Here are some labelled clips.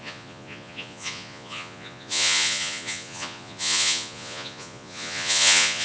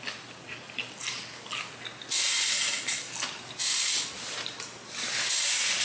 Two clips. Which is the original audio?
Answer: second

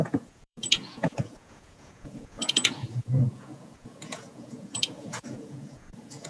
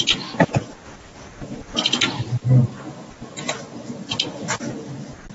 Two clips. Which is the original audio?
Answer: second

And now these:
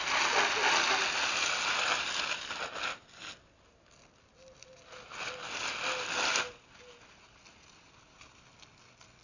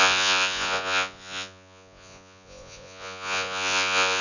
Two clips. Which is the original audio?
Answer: first